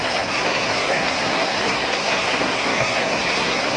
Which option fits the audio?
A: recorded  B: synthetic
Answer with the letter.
B